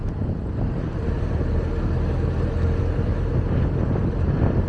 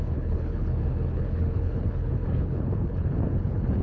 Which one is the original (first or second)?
first